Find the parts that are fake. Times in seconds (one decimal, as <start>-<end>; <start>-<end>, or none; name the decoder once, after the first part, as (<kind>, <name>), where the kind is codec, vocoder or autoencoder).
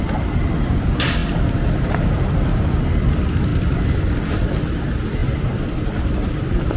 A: 0.0-5.2 (vocoder, BigVGAN v2); 6.1-6.8